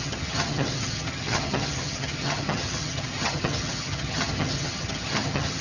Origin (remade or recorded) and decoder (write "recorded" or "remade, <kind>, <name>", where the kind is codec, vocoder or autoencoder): remade, vocoder, HiFi-GAN